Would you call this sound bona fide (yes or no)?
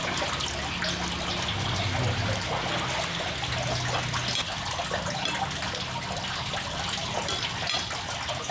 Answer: yes